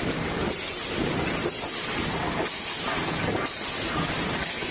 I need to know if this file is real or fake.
real